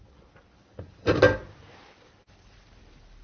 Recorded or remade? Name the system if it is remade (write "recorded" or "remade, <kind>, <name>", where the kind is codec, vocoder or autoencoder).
recorded